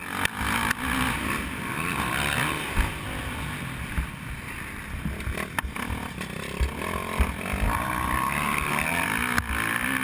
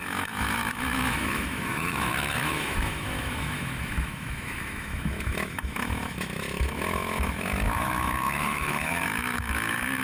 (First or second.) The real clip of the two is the first